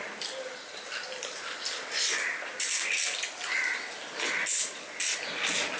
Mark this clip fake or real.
real